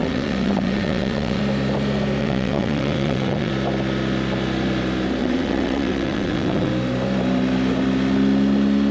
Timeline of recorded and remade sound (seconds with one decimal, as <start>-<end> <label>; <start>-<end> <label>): 0.0-1.4 remade; 1.4-2.2 recorded; 2.2-3.5 remade; 3.5-5.2 recorded; 5.2-6.7 remade; 6.7-8.9 recorded